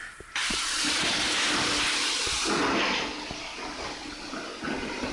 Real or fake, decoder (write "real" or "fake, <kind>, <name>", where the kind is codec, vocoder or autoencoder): real